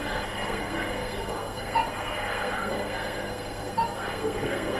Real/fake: fake